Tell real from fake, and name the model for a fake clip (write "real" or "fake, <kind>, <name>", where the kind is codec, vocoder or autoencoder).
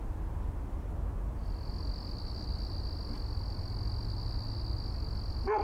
real